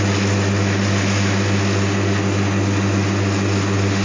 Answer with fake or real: real